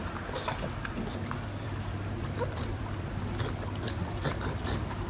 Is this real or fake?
fake